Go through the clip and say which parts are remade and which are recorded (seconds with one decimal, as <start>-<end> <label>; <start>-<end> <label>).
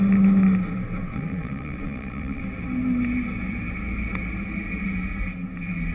0.0-1.0 recorded; 1.0-2.4 remade; 2.4-5.9 recorded